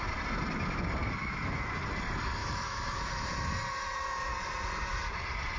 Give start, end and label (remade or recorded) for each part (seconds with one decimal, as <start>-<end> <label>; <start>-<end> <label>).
0.0-1.0 recorded; 1.0-1.7 remade; 1.7-2.4 recorded; 2.4-3.1 remade; 3.1-5.6 recorded